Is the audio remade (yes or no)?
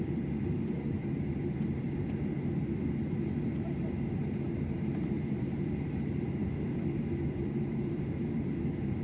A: yes